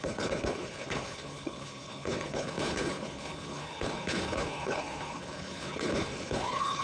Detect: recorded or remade remade